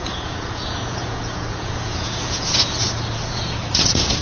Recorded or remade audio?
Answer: remade